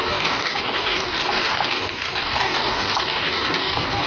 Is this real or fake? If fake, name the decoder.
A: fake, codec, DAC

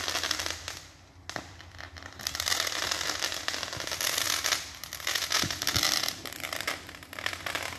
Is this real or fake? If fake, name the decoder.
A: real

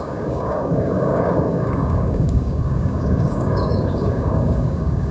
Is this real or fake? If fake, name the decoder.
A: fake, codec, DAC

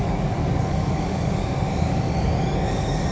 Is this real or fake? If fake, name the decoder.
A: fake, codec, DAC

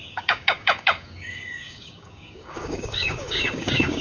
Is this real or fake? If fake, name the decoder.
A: fake, codec, DAC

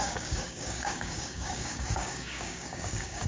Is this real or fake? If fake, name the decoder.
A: fake, codec, DAC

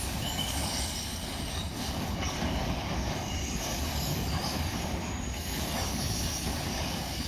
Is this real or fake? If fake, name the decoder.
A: fake, codec, DAC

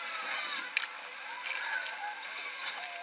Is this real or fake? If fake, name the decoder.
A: real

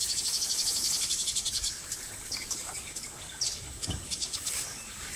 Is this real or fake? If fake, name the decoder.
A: fake, codec, DAC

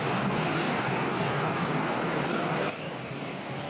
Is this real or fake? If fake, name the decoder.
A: fake, codec, DAC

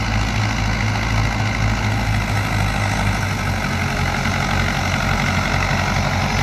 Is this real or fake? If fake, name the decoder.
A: real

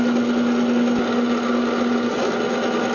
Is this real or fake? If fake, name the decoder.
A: real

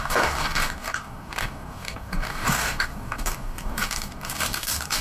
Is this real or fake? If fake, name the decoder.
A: fake, codec, DAC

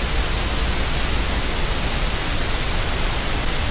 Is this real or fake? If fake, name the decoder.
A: real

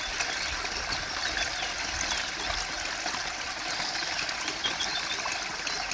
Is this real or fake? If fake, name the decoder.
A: real